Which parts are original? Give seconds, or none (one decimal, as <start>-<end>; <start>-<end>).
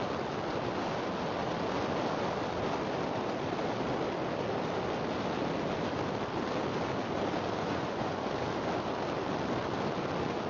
0.0-7.6; 8.3-10.5